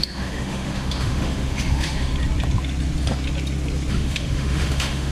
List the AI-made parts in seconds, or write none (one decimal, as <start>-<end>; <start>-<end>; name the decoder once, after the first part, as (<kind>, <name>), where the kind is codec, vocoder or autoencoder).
0.0-2.1 (autoencoder, DAC-VAE); 3.9-5.1